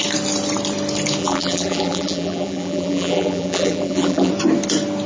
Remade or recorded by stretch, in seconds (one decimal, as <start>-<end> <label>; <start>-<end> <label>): 0.0-1.2 recorded; 1.2-4.3 remade; 4.3-5.1 recorded